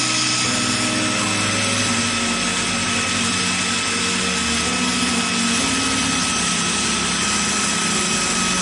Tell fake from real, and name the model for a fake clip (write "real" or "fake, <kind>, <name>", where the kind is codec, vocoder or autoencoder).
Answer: real